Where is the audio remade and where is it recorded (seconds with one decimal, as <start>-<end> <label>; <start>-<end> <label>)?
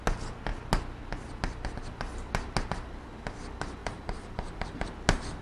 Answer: 0.0-3.8 recorded; 3.8-4.9 remade; 4.9-5.4 recorded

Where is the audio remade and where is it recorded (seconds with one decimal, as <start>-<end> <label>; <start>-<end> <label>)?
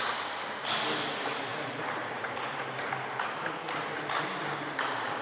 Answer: 0.0-5.2 recorded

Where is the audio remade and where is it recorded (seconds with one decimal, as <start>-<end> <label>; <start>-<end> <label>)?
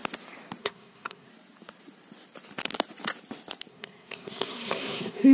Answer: 0.0-0.6 recorded; 0.6-1.3 remade; 1.3-3.7 recorded; 3.7-5.3 remade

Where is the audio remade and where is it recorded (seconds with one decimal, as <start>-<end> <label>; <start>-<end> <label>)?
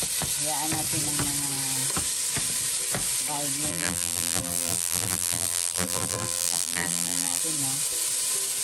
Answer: 0.0-3.7 recorded; 3.7-7.4 remade; 7.4-8.6 recorded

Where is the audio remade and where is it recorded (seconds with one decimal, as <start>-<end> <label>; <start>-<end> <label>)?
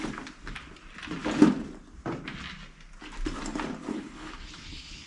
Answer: 0.0-3.9 recorded; 3.9-5.1 remade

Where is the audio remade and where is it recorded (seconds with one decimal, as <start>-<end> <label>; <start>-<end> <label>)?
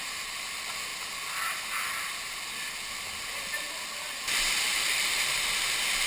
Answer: 0.0-0.9 remade; 0.9-4.6 recorded; 4.6-6.1 remade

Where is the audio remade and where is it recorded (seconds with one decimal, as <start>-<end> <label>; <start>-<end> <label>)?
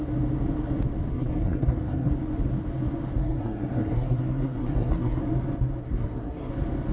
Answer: 0.0-1.1 recorded; 1.1-2.1 remade; 2.1-3.2 recorded; 3.2-5.2 remade; 5.2-5.8 recorded; 5.8-6.5 remade; 6.5-6.9 recorded